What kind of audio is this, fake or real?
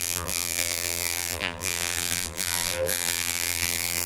fake